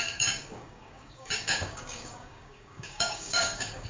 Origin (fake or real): fake